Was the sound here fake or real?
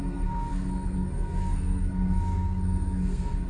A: fake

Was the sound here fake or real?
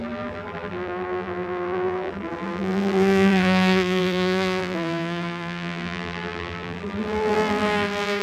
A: fake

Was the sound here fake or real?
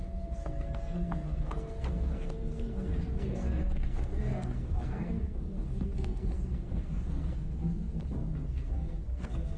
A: fake